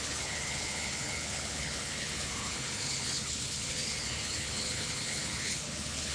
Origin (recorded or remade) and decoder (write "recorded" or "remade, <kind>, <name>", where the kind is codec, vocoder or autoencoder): remade, codec, HILCodec